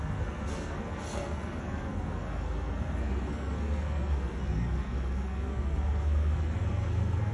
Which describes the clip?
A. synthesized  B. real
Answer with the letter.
A